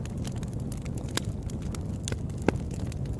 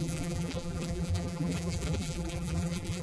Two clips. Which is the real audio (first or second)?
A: first